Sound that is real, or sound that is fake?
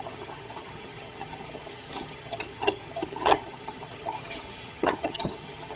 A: fake